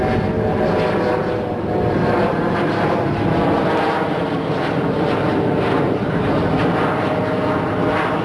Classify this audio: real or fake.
real